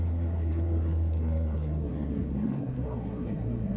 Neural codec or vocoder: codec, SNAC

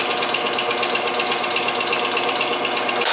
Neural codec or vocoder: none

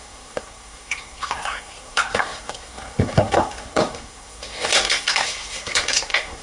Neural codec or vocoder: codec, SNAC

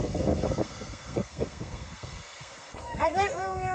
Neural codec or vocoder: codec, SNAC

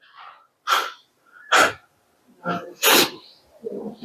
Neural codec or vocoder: none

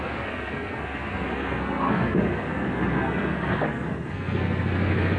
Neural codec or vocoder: codec, SNAC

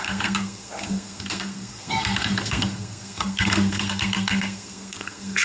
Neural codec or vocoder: codec, SNAC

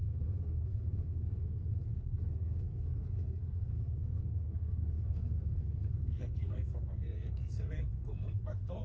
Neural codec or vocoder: codec, SNAC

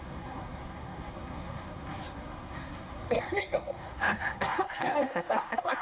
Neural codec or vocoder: codec, SNAC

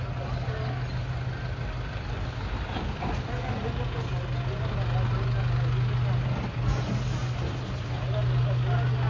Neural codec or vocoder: none